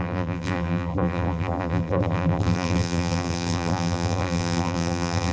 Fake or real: fake